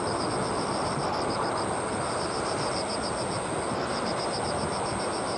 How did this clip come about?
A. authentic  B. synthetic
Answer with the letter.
A